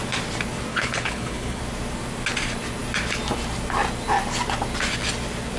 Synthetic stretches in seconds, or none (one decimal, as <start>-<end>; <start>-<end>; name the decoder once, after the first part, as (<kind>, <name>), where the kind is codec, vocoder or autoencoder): 0.7-1.6 (codec, HILCodec)